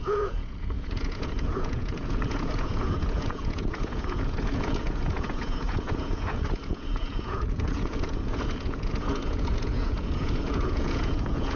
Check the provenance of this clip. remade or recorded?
remade